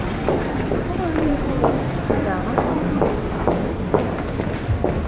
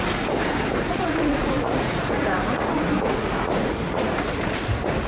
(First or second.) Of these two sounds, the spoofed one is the second